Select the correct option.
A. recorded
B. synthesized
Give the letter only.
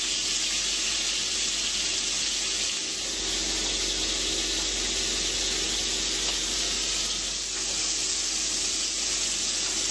A